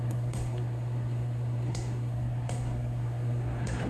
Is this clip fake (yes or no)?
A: yes